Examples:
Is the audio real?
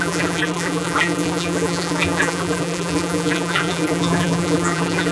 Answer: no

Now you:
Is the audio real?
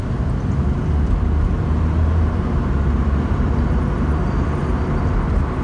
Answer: no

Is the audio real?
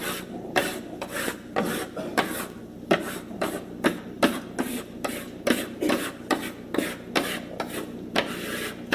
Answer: yes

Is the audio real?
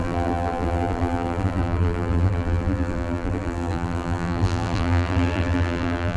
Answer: no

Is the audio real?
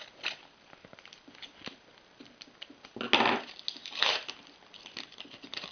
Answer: yes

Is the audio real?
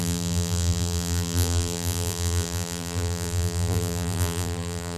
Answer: no